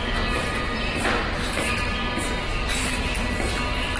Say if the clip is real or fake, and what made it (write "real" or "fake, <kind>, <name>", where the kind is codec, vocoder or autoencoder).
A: real